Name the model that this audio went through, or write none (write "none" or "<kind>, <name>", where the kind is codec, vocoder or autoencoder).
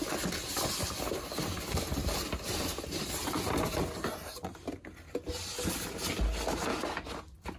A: none